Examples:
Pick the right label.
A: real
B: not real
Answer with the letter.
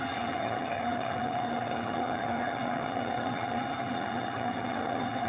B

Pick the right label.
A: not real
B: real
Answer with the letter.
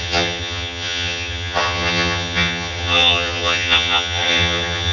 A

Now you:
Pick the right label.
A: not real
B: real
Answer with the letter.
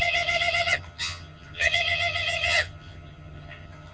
A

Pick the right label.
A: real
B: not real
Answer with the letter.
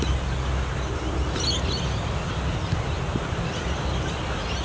A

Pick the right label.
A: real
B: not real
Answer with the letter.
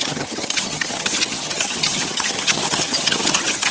B